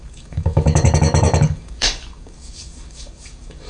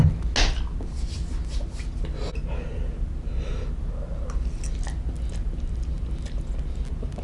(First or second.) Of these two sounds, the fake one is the first